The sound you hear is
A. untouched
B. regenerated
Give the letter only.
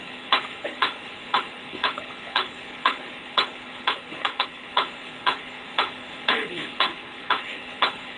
B